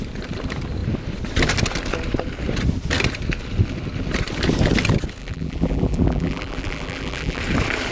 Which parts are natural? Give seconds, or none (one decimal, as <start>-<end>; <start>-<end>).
0.0-5.2; 7.4-7.9